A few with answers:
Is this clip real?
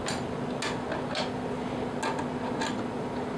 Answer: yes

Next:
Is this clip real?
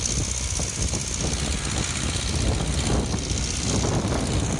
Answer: yes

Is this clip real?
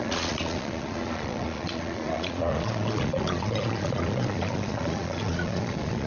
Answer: no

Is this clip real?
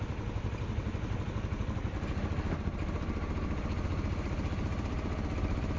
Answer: yes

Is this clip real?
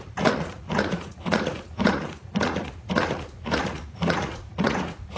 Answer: no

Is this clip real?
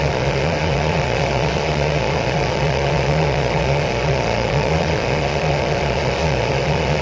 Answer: no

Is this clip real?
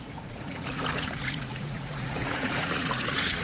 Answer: no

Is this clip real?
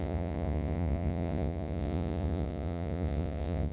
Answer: no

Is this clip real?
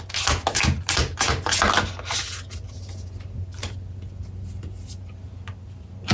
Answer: yes